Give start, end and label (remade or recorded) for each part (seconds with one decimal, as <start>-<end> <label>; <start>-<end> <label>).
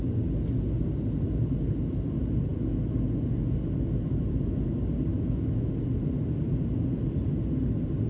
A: 0.0-5.1 recorded; 5.1-5.7 remade; 5.7-8.1 recorded